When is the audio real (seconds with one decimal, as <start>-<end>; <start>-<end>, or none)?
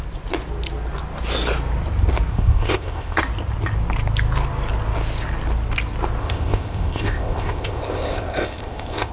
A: 0.0-2.3; 3.2-6.2